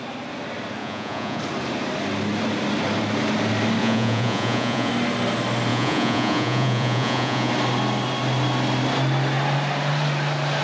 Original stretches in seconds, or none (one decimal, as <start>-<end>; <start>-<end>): 0.0-0.8; 1.4-3.8; 4.9-5.7; 7.5-10.6